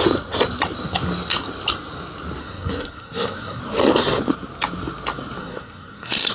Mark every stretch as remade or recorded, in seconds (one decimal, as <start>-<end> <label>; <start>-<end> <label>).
0.0-2.4 recorded; 2.4-3.6 remade; 3.6-5.4 recorded; 5.4-6.3 remade